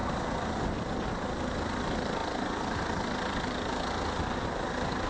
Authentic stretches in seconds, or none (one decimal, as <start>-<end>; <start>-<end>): 0.0-5.1